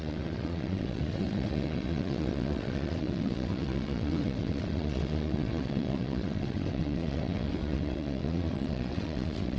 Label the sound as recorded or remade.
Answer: remade